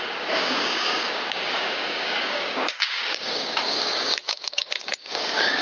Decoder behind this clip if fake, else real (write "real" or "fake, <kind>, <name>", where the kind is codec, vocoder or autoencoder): fake, codec, DAC